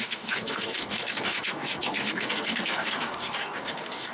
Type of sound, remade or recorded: remade